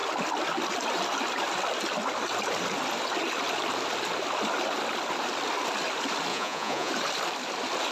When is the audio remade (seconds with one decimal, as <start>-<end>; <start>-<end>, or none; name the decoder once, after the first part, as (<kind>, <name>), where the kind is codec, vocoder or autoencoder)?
6.3-6.9 (vocoder, Vocos)